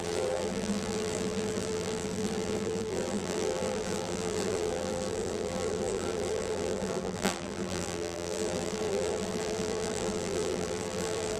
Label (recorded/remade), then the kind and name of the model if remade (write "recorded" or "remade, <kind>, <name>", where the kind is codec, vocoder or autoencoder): remade, vocoder, BigVGAN v2